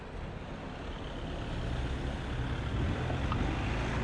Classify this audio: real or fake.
real